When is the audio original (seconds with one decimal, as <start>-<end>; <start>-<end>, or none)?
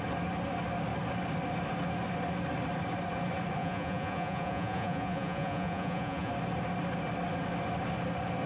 0.0-3.6; 6.3-8.5